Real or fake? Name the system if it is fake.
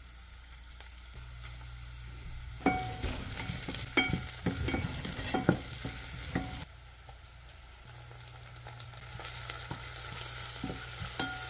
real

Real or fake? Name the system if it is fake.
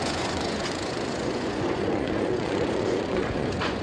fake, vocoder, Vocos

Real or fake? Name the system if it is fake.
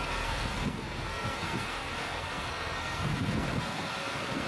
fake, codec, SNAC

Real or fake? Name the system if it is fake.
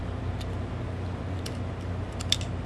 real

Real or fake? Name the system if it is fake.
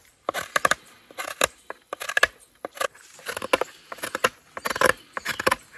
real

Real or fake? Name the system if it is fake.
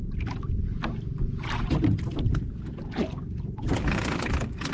real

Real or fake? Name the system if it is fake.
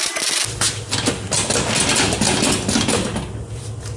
real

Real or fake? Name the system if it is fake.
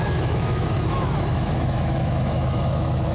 fake, autoencoder, DAC-VAE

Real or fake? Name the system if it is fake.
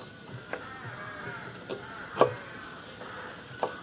real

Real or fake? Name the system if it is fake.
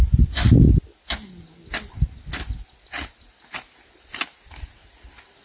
real